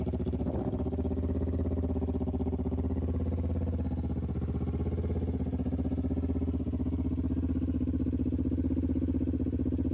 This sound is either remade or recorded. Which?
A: recorded